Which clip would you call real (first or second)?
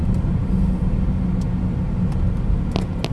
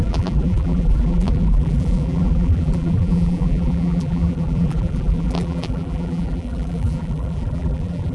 first